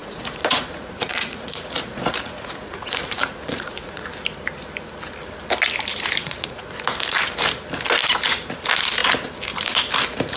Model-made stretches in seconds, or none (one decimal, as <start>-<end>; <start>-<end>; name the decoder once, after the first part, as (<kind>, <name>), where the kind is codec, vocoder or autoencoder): 0.0-4.0 (vocoder, Vocos); 6.2-6.7